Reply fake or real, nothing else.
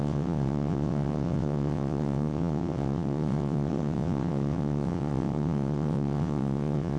fake